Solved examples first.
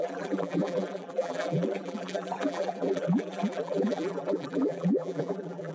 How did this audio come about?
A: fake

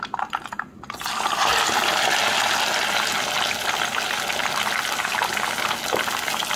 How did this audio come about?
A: real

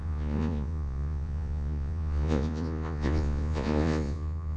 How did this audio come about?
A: fake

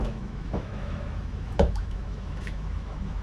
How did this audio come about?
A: fake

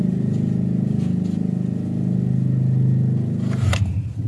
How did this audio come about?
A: real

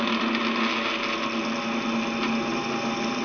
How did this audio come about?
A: real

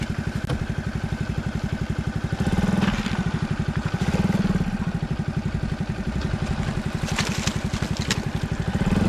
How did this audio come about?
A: real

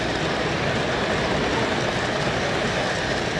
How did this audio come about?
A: real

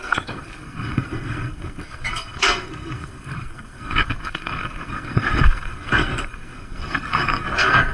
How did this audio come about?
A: fake